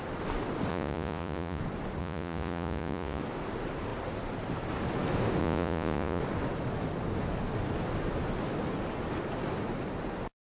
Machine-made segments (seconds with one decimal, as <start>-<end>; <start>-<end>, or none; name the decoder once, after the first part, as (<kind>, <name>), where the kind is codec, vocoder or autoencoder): 0.7-1.6 (vocoder, Vocos); 2.0-3.2; 5.4-6.2